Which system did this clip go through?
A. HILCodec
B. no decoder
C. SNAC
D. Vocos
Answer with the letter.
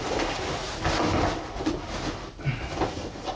B